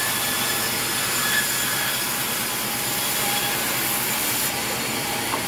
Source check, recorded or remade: recorded